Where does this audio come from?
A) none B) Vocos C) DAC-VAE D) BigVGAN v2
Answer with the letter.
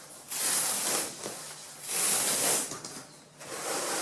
A